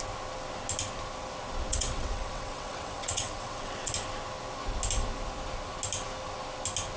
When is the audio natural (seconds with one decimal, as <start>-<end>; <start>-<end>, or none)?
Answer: 0.0-1.7; 3.9-7.0